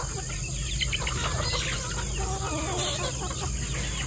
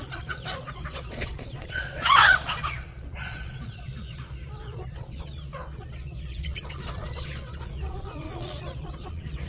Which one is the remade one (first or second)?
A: second